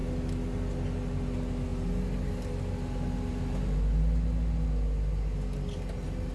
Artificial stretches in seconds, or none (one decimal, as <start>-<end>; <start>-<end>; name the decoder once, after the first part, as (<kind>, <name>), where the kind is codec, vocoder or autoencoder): none